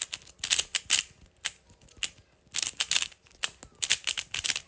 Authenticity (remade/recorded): recorded